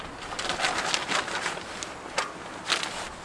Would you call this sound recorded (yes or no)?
yes